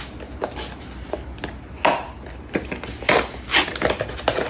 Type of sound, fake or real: real